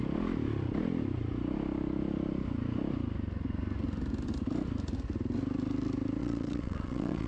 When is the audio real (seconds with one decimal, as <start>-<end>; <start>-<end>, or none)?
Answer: 0.0-6.2